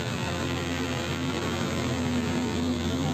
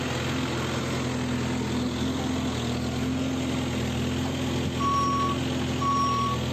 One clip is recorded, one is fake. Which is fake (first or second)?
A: first